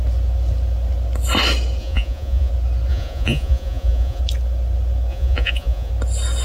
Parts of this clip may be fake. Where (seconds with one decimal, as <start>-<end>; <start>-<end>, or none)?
1.8-2.5; 2.9-4.2; 5.1-5.9